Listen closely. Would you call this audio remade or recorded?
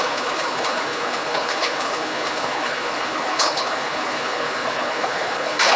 remade